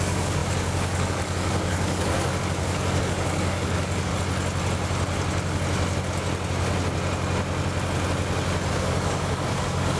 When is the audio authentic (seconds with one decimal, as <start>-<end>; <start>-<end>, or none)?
4.1-8.7